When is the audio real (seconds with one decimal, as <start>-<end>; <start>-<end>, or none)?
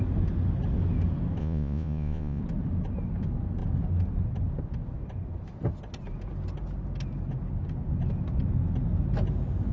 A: 0.0-1.4; 2.4-9.7